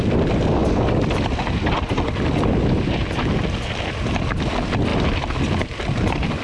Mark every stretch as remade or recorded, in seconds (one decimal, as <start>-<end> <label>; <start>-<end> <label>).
0.0-6.4 recorded